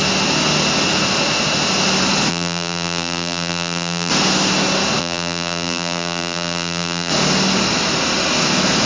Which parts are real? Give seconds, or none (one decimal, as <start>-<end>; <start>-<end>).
0.0-2.3; 4.1-5.0; 7.1-8.9